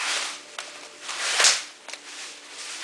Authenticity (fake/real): real